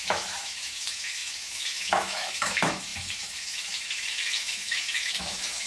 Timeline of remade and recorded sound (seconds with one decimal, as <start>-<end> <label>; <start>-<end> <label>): 0.0-5.7 remade